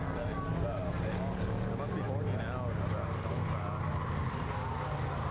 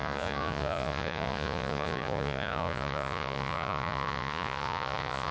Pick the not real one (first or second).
second